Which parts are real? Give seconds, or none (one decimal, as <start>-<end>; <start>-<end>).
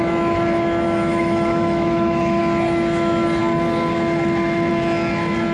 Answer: 0.0-1.1; 2.4-5.5